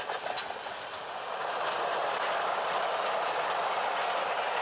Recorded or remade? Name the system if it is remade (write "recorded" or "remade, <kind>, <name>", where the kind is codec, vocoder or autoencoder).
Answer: recorded